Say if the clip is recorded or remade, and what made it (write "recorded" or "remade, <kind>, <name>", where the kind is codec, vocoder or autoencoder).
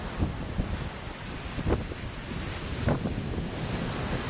recorded